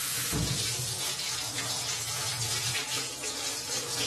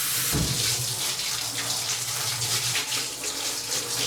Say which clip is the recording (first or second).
second